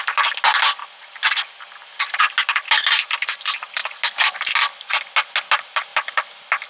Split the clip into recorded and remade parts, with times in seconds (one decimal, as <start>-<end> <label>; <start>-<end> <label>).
0.0-6.7 recorded